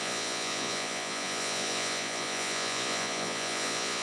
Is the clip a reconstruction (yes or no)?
yes